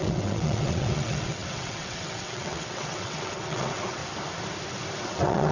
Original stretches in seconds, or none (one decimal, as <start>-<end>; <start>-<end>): 4.0-5.0